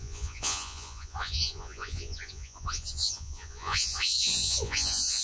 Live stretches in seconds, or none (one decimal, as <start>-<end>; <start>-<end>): none